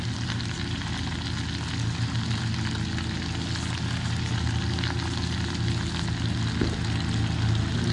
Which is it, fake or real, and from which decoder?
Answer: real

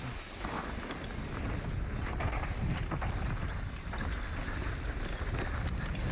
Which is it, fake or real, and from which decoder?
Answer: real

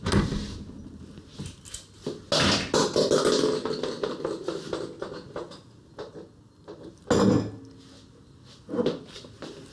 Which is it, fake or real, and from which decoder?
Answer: real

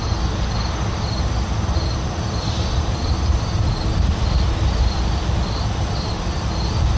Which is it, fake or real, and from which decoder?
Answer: real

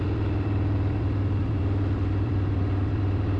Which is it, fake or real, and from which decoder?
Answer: fake, vocoder, BigVGAN v2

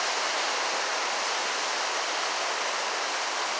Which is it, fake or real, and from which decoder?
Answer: real